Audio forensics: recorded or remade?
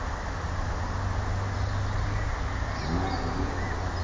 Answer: recorded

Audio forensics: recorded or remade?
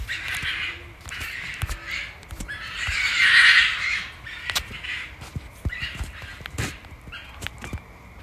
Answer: recorded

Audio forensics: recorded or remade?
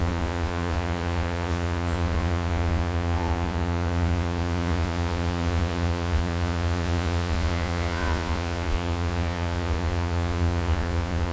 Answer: remade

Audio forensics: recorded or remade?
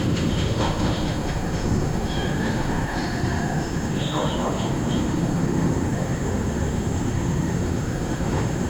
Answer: remade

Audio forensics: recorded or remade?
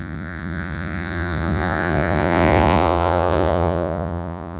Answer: remade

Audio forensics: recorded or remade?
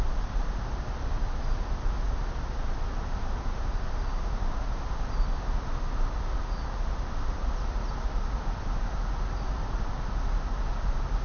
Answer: recorded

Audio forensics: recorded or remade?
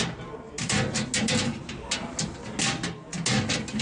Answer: recorded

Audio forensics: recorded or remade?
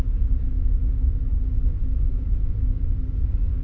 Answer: recorded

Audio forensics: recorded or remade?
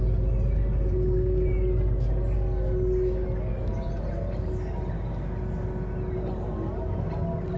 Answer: recorded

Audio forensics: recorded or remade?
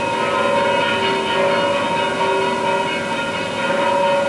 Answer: recorded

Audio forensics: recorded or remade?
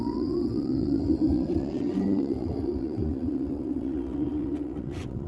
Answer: remade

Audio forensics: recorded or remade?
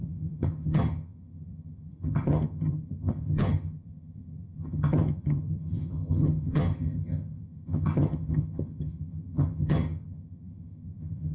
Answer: remade